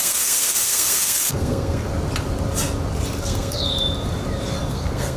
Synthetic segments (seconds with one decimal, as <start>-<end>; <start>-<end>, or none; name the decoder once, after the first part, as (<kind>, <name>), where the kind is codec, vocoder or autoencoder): 0.0-1.9 (codec, SNAC); 3.2-3.7; 4.7-5.2